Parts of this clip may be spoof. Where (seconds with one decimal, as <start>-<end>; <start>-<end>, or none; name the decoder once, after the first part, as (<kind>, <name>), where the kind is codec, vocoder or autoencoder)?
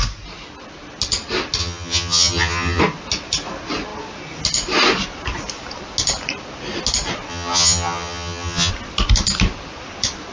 1.6-2.8 (vocoder, HiFi-GAN); 7.3-8.7